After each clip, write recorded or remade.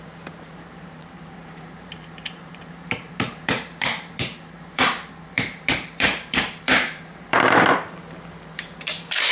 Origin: remade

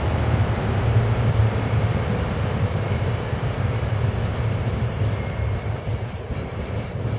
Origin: remade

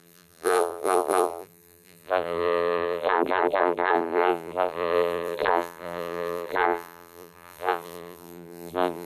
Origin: remade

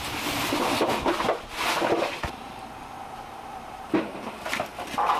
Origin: recorded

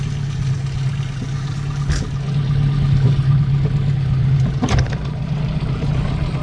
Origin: recorded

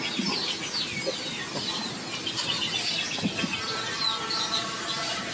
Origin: recorded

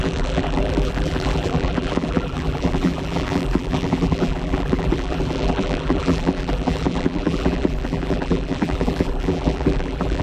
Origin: remade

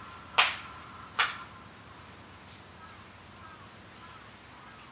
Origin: recorded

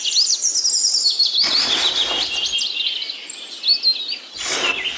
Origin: recorded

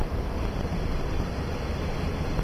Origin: remade